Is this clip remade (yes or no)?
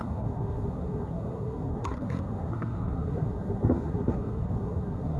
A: yes